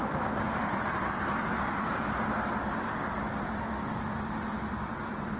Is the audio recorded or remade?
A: remade